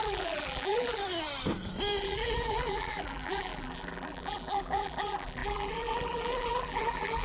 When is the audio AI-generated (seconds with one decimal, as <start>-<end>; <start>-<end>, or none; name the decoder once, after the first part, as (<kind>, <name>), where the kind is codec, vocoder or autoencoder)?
0.0-1.0 (vocoder, BigVGAN v2); 2.0-7.2